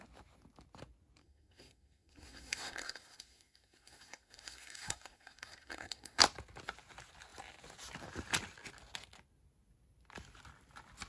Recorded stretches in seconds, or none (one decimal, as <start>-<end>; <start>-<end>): 0.0-1.2; 6.2-11.1